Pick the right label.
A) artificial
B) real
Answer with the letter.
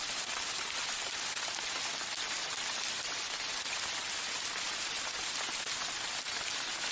B